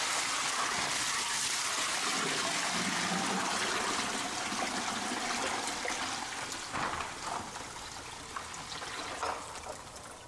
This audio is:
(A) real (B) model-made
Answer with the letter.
A